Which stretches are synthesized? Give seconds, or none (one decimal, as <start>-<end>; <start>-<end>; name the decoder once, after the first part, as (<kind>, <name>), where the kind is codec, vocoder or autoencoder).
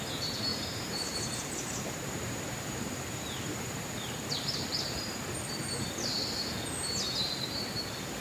0.5-4.6 (vocoder, BigVGAN v2)